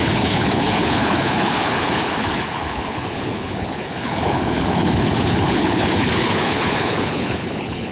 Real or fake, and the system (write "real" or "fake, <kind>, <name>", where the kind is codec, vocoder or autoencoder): fake, codec, HILCodec